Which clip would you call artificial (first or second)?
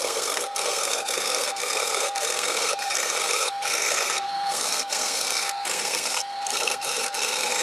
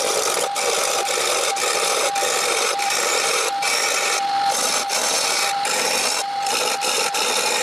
first